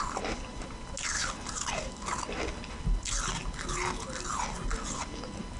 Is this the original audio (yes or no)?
yes